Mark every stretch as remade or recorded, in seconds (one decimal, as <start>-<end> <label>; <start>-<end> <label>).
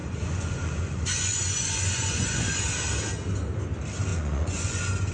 0.0-2.6 remade; 2.6-4.1 recorded; 4.1-5.1 remade